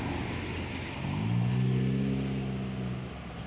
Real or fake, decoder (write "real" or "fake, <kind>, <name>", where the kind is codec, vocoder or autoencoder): real